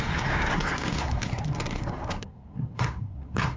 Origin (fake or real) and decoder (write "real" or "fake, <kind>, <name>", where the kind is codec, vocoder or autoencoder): fake, codec, SNAC